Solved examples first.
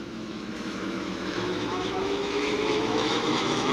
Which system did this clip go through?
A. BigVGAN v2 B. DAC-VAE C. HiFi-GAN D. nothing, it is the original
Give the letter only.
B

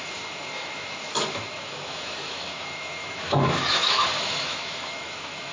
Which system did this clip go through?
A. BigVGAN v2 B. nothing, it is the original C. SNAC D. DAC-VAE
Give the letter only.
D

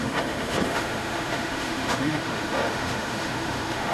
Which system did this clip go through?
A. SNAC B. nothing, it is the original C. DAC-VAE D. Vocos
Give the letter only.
C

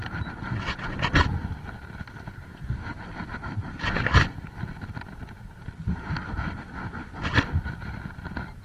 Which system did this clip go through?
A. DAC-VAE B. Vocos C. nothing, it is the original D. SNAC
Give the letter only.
C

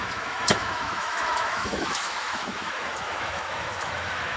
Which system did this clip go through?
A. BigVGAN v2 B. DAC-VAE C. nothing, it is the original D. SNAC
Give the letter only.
B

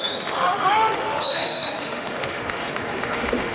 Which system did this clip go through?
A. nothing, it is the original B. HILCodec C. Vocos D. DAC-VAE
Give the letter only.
D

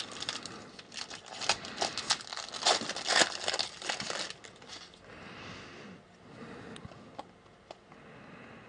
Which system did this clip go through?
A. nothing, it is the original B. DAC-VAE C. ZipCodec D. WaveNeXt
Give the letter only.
A